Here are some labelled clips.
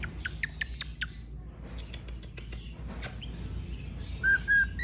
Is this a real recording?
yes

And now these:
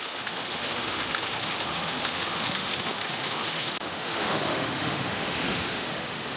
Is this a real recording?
no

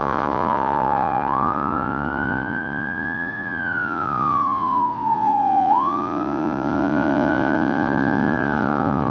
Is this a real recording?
no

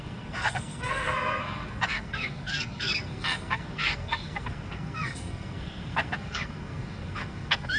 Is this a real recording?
no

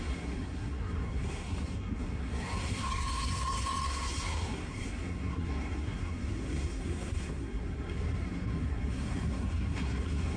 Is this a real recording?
no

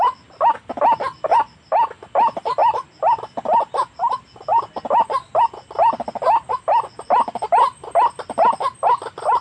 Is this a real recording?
yes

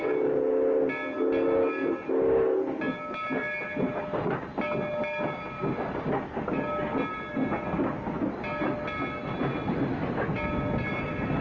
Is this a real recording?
yes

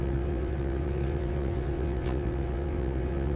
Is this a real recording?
no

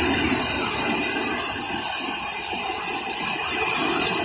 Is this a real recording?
yes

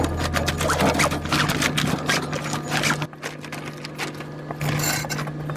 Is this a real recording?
yes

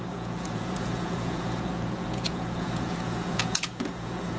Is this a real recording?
no